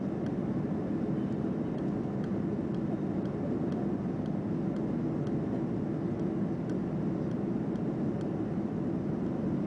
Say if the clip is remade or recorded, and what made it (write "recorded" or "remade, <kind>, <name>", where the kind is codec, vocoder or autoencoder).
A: recorded